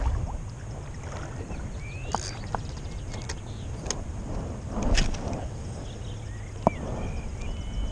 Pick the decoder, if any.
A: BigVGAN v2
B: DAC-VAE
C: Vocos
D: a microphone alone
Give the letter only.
D